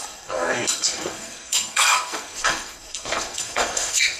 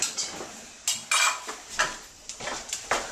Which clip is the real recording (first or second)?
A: second